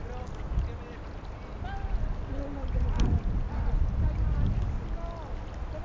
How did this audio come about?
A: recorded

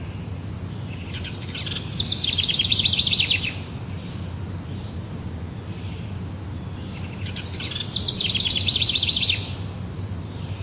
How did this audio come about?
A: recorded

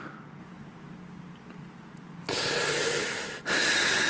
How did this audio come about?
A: recorded